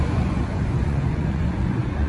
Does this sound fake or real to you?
fake